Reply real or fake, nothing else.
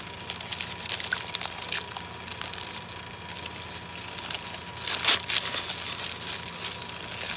real